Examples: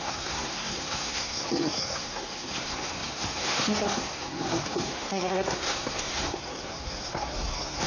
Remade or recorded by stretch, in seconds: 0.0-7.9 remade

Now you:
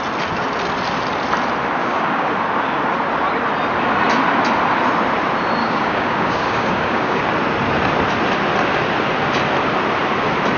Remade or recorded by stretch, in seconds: 0.0-1.8 recorded; 1.8-2.3 remade; 2.3-5.6 recorded; 5.6-7.2 remade; 7.2-10.6 recorded

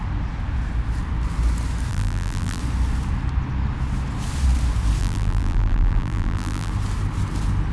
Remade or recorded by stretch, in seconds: 0.0-1.9 recorded; 1.9-2.6 remade; 2.6-5.0 recorded; 5.0-6.7 remade; 6.7-7.7 recorded